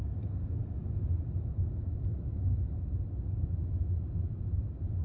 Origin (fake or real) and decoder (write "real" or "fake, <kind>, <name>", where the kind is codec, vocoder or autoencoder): real